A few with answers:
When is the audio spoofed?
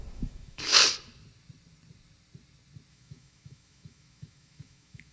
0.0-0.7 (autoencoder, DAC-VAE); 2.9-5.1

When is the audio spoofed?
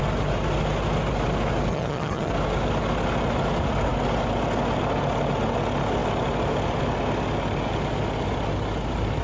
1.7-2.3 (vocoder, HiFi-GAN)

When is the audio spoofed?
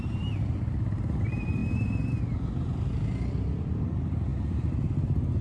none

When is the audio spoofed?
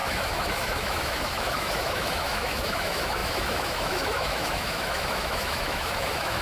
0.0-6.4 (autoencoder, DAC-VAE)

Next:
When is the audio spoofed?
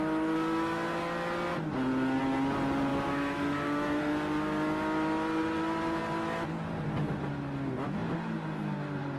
2.9-4.0 (autoencoder, DAC-VAE)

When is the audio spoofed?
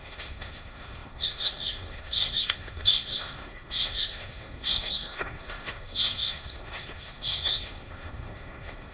0.0-8.9 (codec, SNAC)